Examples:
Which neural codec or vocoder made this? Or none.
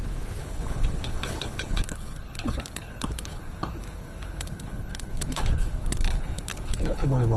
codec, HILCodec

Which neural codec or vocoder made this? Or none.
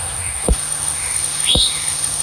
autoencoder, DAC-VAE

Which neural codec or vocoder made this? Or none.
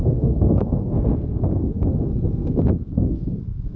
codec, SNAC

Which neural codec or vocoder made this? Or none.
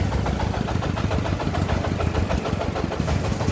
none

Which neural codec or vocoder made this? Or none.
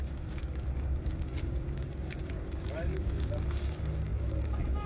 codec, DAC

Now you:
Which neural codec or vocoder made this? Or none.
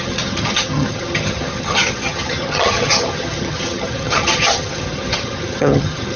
vocoder, HiFi-GAN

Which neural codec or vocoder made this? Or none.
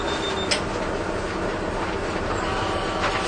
none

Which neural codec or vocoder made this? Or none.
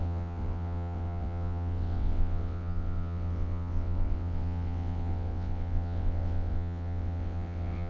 vocoder, WaveNeXt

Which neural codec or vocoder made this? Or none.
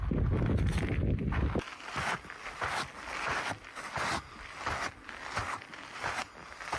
none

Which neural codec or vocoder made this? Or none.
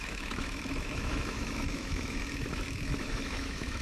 autoencoder, DAC-VAE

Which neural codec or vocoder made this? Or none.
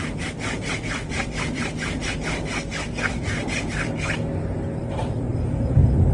none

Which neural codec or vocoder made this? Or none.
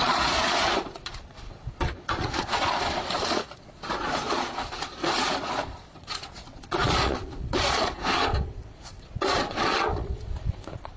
vocoder, Vocos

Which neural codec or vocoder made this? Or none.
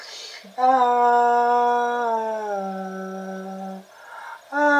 none